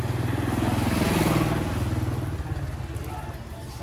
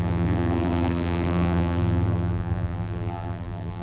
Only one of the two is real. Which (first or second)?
first